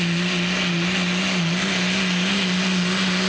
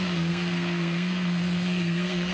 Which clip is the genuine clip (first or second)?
first